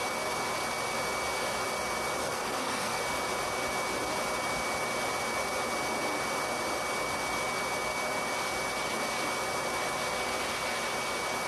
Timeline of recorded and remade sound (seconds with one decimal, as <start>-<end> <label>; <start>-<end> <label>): 0.0-2.2 recorded; 2.2-3.0 remade; 3.0-11.5 recorded